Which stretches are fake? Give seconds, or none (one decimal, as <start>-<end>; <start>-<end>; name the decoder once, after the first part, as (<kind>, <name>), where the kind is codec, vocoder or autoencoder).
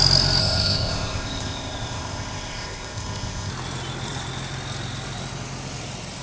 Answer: 0.4-3.5 (codec, ZipCodec)